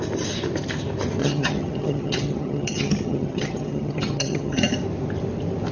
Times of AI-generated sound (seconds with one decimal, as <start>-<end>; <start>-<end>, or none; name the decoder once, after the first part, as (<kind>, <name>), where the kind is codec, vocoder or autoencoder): 1.2-4.6 (vocoder, HiFi-GAN)